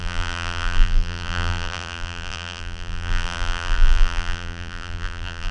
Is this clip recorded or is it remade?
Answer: remade